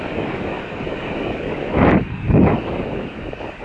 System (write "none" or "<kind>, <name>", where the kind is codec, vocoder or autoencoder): codec, DAC